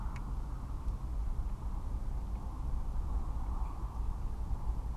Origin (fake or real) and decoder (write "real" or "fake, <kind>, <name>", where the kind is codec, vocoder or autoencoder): real